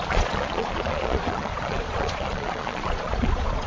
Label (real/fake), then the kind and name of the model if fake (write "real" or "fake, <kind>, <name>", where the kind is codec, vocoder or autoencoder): fake, vocoder, Vocos